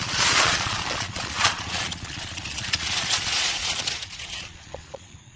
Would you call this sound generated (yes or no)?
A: yes